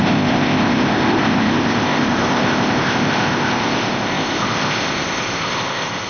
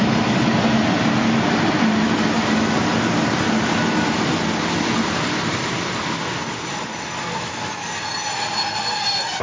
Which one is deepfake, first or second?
first